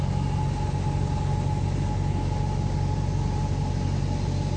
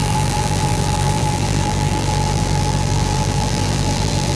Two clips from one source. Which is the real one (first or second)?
first